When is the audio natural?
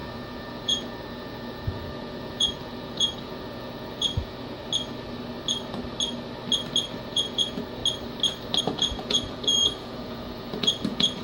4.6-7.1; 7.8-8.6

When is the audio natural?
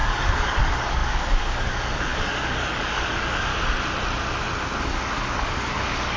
3.5-4.8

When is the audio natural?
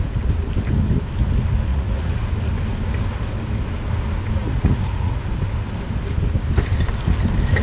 0.0-1.7; 2.3-4.4; 5.2-7.6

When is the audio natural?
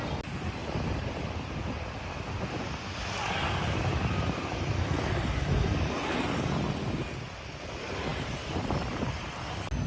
0.0-0.6; 1.2-8.1; 8.7-9.9